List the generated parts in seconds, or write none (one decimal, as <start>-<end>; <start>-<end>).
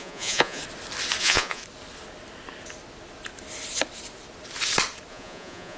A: 0.0-0.6; 1.2-1.6; 5.1-5.8